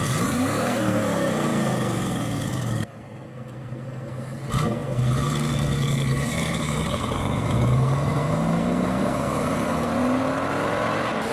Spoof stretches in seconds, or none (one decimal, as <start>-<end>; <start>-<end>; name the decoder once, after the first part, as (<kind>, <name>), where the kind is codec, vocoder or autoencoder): 0.0-9.9 (codec, SNAC)